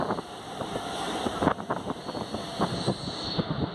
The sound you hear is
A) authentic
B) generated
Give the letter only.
A